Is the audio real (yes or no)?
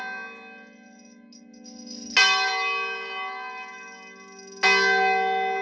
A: yes